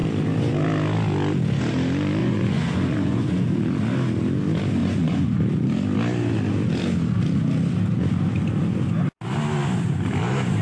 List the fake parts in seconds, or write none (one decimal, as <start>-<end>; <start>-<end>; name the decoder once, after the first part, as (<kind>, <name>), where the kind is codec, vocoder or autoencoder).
2.2-3.5 (vocoder, Vocos); 4.8-5.4